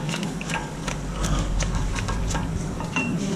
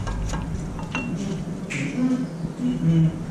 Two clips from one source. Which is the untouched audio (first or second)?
second